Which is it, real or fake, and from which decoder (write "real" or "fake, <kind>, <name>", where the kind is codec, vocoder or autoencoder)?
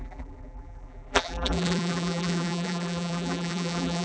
fake, vocoder, BigVGAN v2